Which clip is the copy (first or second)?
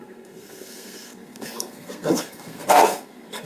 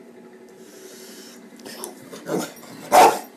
first